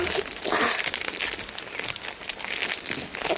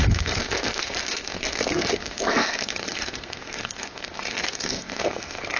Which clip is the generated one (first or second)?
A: second